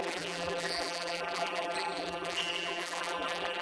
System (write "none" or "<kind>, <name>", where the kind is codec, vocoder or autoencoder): vocoder, BigVGAN v2